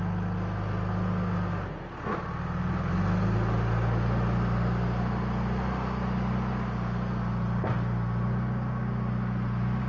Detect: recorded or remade recorded